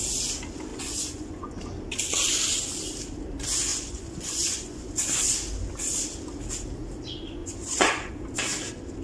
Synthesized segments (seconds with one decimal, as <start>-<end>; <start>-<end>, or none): 0.7-1.6; 3.7-4.9; 7.4-8.1